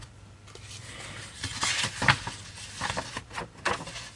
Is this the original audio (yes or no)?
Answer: yes